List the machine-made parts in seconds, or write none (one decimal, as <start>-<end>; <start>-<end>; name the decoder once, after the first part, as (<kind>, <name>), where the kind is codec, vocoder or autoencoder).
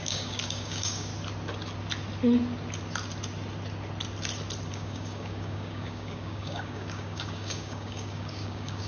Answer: 0.0-1.1 (codec, DAC); 4.7-8.9